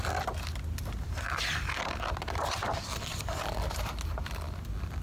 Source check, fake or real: real